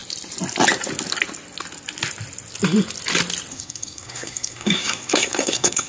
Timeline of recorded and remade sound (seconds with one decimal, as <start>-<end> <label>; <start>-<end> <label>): 0.0-3.5 recorded; 3.5-5.9 remade